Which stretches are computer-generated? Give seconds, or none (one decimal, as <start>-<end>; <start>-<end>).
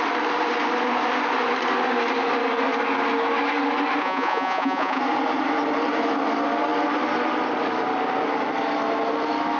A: 4.0-5.0